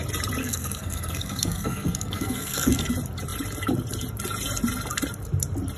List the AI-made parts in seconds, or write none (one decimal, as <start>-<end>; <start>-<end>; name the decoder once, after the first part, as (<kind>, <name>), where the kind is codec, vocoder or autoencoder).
0.4-2.9 (codec, SNAC)